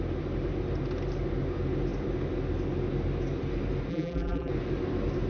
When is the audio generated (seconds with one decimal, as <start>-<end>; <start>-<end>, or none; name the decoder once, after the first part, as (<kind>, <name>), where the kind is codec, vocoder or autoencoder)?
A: 3.9-4.5 (vocoder, BigVGAN v2)